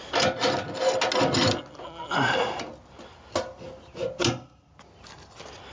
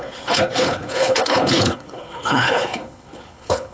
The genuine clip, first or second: first